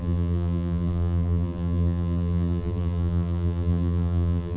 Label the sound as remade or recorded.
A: remade